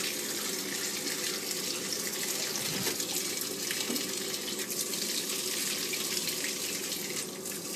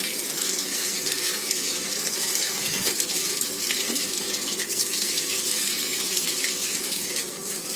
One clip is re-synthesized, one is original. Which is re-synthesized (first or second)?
second